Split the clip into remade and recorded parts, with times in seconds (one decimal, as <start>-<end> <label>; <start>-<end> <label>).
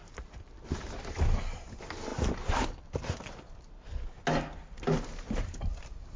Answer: 0.0-6.2 recorded